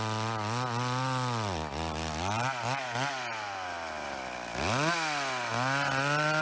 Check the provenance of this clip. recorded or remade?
recorded